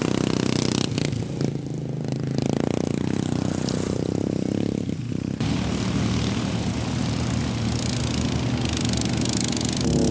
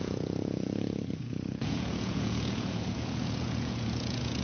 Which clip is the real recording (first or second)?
first